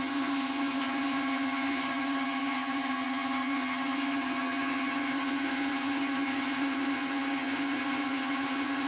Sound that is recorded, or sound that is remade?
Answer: remade